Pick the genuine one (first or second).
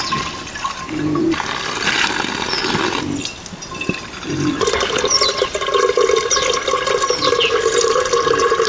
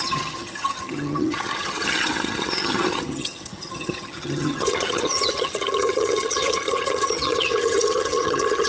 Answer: first